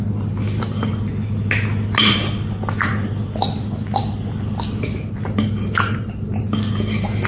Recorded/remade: recorded